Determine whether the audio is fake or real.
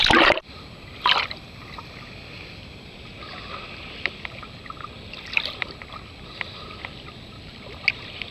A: real